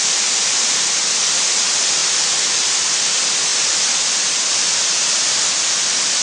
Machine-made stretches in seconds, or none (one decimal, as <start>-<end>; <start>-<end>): 3.5-5.5